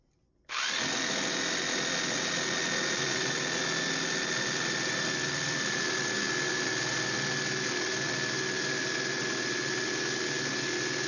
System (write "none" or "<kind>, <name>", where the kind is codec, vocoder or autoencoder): none